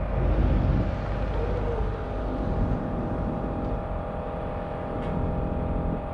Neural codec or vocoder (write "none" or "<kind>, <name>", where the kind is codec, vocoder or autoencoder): none